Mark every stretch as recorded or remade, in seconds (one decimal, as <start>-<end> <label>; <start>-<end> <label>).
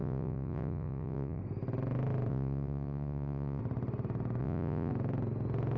0.0-1.4 remade; 1.4-2.3 recorded; 2.3-3.6 remade; 3.6-4.4 recorded; 4.4-4.9 remade; 4.9-5.8 recorded